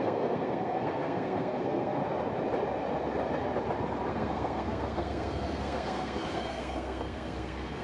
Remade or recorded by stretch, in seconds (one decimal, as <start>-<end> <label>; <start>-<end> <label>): 0.0-2.0 remade; 2.0-4.1 recorded; 4.1-7.8 remade